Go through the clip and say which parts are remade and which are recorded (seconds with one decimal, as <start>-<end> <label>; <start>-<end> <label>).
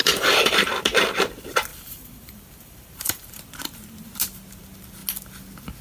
0.0-0.7 remade; 0.7-1.7 recorded; 1.7-3.4 remade; 3.4-5.8 recorded